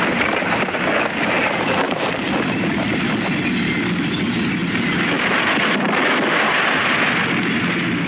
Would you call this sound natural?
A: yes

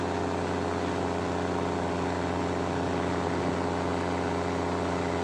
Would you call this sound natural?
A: yes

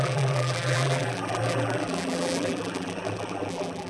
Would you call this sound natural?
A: no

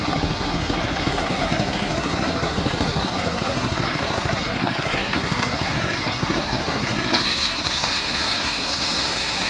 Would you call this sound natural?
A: no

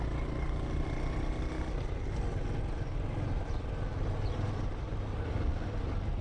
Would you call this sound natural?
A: yes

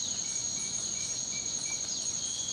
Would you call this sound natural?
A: no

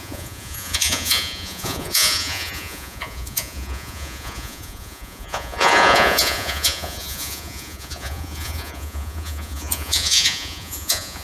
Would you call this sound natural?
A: no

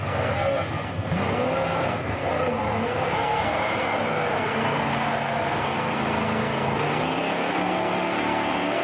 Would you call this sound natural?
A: no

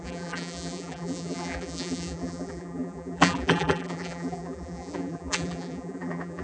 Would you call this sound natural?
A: no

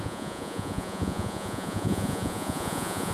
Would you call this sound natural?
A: no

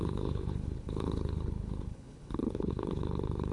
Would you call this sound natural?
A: no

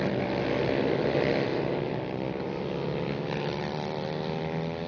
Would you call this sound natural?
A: yes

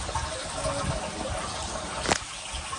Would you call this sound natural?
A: yes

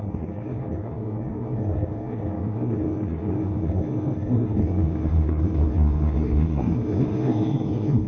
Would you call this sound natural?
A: no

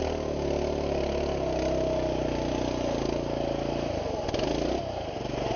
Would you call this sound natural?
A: yes